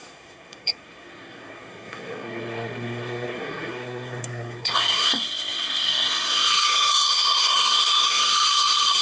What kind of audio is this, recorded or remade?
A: remade